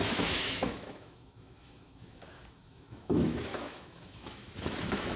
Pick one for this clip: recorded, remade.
remade